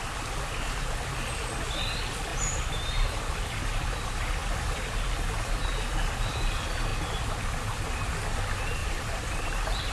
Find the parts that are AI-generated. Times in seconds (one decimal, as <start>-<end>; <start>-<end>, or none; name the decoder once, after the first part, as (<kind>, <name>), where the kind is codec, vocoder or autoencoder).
2.3-3.3 (vocoder, BigVGAN v2); 8.8-9.9